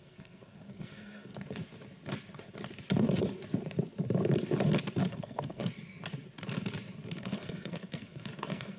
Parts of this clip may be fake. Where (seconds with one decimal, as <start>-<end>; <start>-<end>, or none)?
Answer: 0.0-1.3; 5.1-5.6; 7.2-8.8